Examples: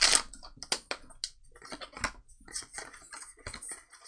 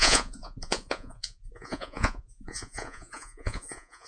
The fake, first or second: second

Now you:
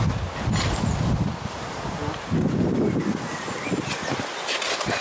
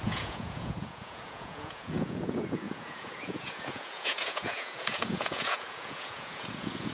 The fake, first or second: second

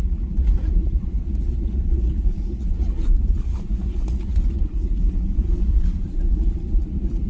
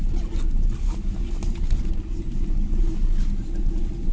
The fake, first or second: first